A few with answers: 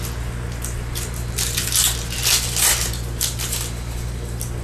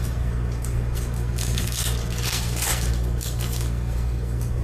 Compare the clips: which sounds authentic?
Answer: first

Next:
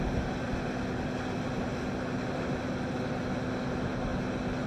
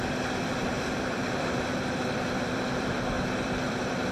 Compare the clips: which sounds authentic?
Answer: first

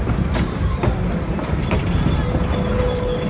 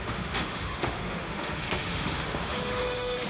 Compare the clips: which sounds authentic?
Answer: first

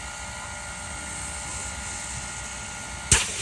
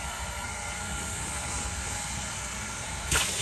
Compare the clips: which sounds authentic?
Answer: first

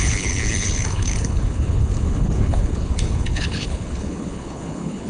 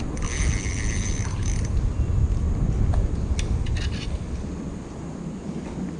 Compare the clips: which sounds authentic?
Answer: second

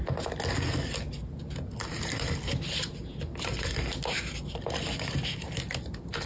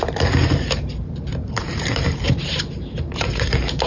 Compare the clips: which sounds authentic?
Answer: first